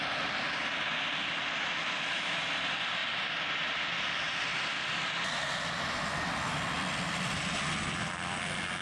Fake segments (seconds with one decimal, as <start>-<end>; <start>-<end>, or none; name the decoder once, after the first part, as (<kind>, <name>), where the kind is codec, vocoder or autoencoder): 1.8-2.4 (autoencoder, DAC-VAE)